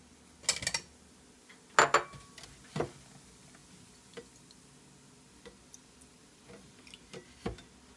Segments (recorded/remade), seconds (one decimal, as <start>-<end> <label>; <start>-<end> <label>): 0.0-8.0 recorded